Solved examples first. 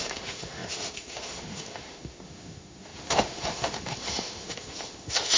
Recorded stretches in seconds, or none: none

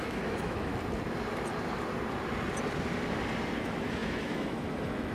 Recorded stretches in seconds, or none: 0.7-3.6

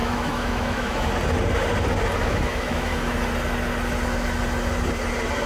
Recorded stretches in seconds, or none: 1.1-2.2; 3.1-5.5